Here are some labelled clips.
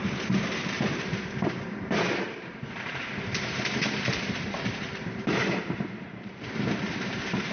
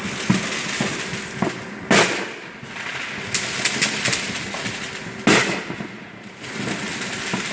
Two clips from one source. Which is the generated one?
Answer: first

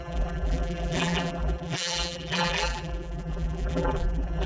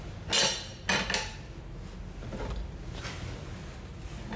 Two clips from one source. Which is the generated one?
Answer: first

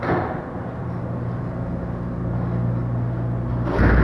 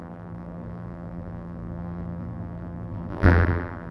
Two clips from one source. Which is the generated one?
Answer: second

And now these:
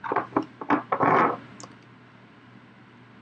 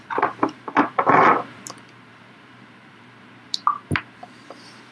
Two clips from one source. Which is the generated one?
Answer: second